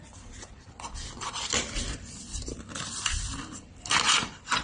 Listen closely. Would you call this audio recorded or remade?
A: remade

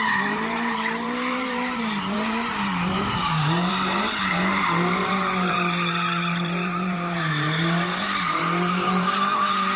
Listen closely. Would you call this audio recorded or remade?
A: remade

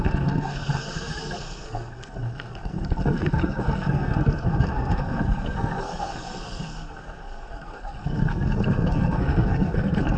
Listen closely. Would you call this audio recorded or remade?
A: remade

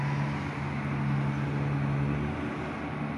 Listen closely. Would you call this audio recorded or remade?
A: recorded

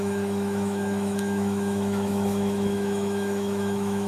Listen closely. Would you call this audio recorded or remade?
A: remade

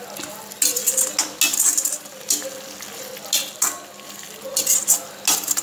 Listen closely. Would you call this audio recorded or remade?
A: recorded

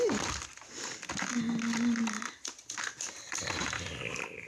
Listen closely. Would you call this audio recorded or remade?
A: recorded